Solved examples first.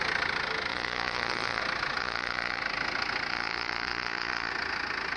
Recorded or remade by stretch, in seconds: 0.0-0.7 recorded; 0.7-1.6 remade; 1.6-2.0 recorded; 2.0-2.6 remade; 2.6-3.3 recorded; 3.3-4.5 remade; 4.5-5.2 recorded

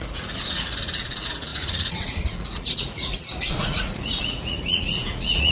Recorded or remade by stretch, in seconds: 0.0-5.5 remade

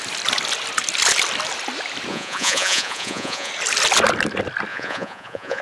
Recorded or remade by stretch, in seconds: 0.0-2.1 recorded; 2.1-3.5 remade; 3.5-4.7 recorded; 4.7-5.6 remade

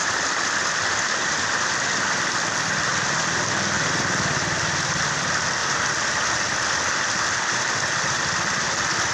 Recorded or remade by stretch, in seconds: 0.0-9.1 recorded

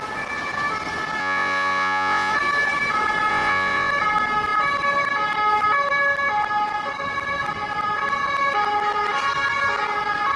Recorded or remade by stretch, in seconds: 0.0-1.2 recorded; 1.2-2.3 remade; 2.3-3.3 recorded; 3.3-3.9 remade; 3.9-10.4 recorded